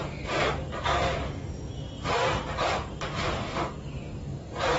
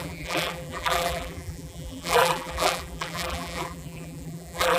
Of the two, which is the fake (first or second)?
second